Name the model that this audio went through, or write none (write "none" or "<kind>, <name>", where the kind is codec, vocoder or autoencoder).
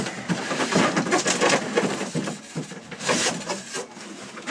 none